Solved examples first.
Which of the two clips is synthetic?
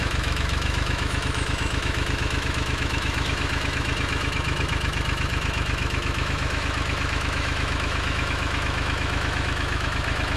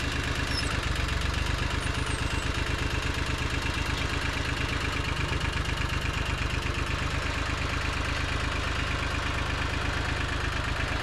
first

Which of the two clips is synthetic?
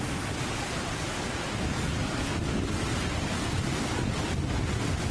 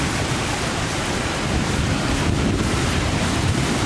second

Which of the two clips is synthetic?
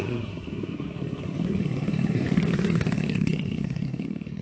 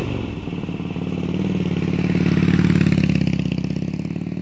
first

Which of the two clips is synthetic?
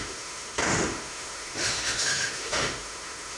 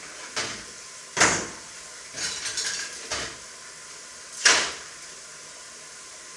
first